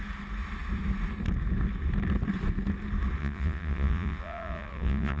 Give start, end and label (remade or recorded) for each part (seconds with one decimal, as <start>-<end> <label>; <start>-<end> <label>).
0.0-3.2 recorded; 3.2-5.2 remade